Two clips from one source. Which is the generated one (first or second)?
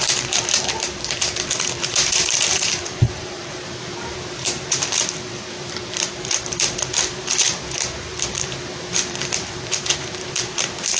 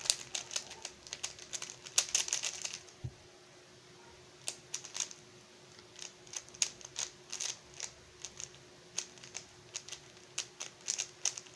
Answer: first